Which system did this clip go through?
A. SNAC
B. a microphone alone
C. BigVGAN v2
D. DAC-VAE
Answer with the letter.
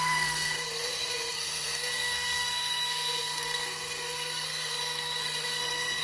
A